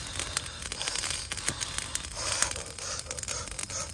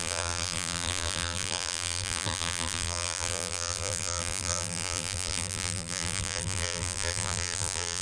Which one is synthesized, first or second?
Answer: second